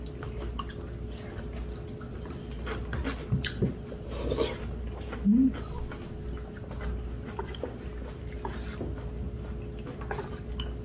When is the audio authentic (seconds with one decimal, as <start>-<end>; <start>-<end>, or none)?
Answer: 0.0-10.8